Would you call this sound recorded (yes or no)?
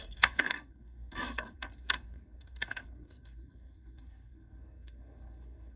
no